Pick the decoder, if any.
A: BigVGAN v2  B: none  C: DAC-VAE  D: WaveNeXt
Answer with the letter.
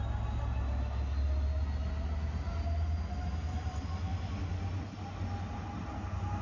B